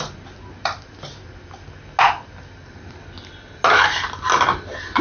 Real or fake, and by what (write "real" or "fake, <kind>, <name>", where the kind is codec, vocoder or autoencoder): real